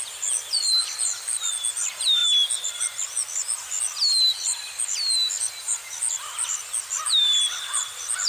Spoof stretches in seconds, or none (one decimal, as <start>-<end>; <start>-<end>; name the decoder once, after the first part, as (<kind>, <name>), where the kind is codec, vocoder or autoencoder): none